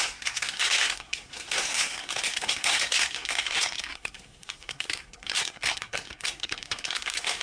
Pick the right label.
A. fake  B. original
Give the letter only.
A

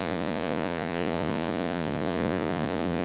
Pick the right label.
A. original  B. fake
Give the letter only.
B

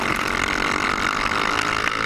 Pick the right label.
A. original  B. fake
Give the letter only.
A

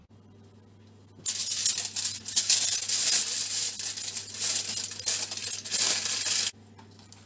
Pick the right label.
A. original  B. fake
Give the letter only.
A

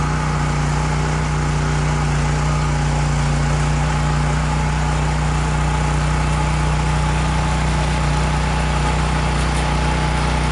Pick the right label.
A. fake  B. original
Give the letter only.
B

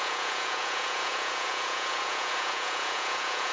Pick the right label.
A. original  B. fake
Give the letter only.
B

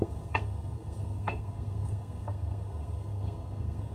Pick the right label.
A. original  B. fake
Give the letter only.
B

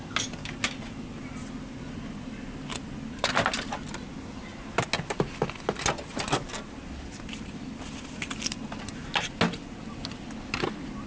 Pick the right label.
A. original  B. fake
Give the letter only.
A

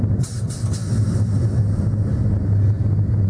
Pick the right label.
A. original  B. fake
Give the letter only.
A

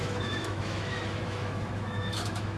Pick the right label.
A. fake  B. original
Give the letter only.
A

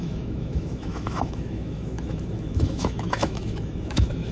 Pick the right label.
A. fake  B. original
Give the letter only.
A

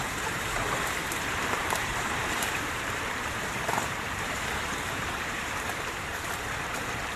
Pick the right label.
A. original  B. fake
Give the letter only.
B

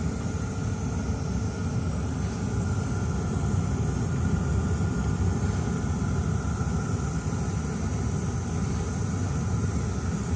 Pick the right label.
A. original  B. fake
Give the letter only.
A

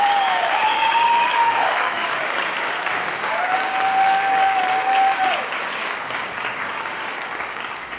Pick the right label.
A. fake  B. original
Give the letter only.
A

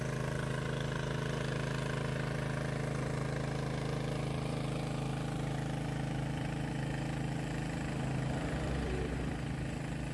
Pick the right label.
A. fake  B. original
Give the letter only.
B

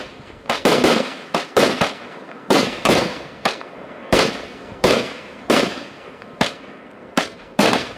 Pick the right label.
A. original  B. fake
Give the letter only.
B